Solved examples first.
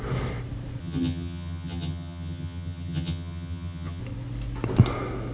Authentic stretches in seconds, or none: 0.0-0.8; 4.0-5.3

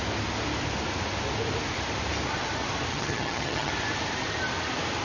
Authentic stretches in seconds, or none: 0.0-2.9; 3.7-5.0

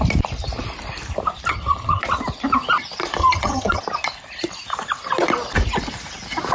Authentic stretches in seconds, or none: 0.0-1.5; 2.0-3.2; 3.8-6.5

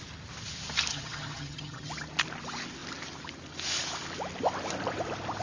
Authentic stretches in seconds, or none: 0.0-0.9; 1.9-5.4

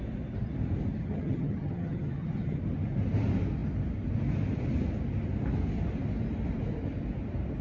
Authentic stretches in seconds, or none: 0.0-1.0; 2.6-7.6

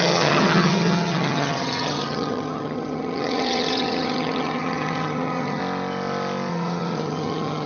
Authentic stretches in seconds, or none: 5.6-6.5

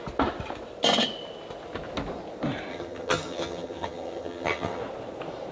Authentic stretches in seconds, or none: 0.0-2.7; 4.8-5.5